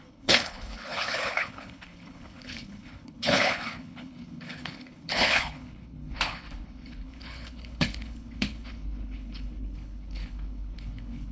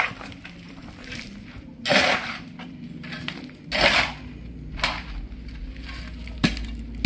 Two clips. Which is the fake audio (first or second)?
first